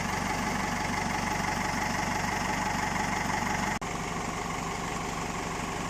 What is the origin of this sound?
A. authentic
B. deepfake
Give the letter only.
A